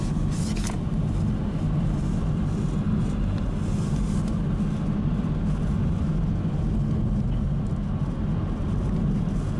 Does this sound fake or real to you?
real